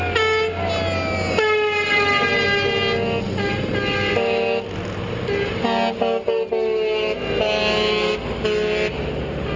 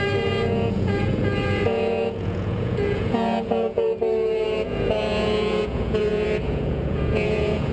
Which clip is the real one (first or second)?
first